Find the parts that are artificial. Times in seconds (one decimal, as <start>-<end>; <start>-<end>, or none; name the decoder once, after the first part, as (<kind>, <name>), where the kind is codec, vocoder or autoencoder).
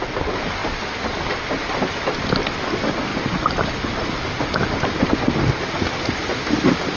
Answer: none